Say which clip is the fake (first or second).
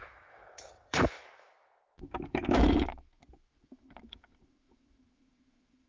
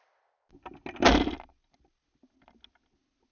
first